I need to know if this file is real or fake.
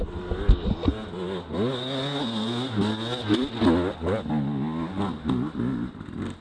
real